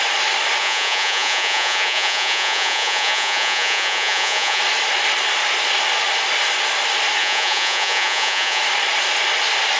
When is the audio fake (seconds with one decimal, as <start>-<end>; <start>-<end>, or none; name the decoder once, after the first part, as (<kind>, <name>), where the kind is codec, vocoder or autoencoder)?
0.6-4.6 (vocoder, Vocos); 7.2-8.6